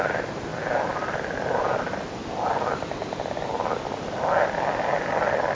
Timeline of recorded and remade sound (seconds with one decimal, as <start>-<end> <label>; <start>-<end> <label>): 0.0-5.5 recorded